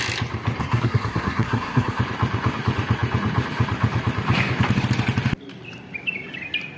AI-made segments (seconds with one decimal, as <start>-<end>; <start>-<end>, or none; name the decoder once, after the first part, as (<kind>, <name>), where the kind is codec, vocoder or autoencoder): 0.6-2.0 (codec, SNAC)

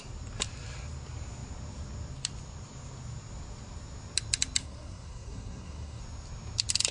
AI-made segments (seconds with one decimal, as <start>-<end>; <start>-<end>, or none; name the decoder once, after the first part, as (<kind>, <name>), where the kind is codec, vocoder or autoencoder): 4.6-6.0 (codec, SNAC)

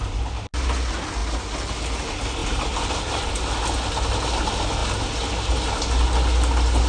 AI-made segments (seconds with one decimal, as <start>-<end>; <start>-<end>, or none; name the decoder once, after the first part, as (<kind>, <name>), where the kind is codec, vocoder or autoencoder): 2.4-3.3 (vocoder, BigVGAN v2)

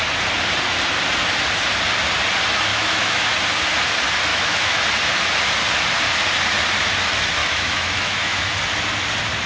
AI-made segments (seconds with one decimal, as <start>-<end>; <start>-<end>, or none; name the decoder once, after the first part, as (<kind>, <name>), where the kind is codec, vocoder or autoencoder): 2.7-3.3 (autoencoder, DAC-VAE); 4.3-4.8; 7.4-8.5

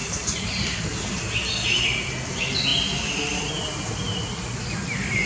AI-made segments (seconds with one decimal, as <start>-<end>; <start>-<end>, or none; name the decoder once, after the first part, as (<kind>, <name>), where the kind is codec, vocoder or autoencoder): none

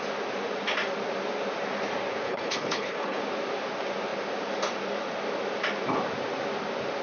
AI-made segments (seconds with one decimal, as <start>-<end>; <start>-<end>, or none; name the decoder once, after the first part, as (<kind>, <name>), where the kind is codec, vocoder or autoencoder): 2.2-3.2 (codec, HILCodec)

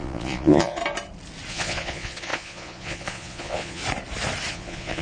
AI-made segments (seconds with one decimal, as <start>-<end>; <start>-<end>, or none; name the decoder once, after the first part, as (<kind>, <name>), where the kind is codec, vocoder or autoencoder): 0.0-0.8 (vocoder, Vocos); 1.5-3.8; 4.5-5.0